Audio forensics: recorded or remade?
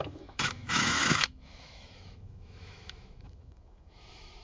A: remade